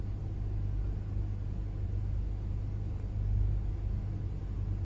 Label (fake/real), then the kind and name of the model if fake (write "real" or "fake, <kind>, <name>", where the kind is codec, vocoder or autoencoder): real